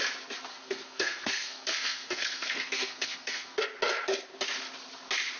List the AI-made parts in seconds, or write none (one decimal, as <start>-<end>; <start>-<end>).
0.5-3.6